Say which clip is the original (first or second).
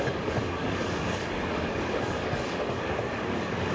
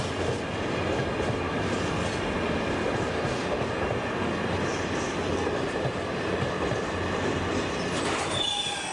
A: second